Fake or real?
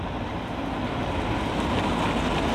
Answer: real